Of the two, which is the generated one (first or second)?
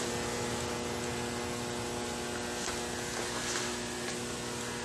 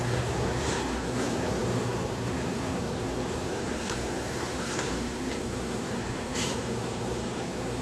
second